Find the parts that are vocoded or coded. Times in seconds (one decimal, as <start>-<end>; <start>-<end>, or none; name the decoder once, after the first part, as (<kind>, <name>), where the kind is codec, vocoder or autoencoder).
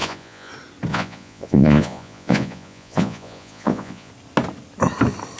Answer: 0.0-0.5 (vocoder, Vocos); 0.9-4.1